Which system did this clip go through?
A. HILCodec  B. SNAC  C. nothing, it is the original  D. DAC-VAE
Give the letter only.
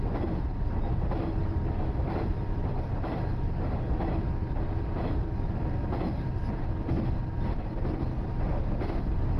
C